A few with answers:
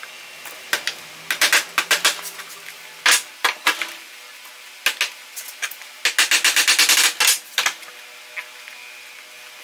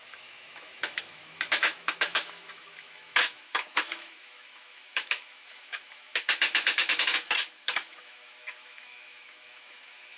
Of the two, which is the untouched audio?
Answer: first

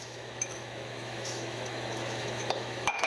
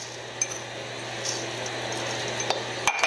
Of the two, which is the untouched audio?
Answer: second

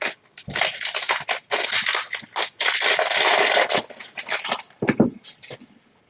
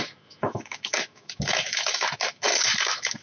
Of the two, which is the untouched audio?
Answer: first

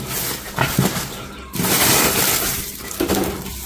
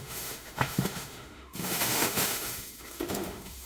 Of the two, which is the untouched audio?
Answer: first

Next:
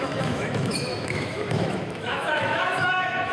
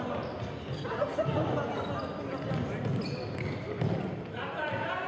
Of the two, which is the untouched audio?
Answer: second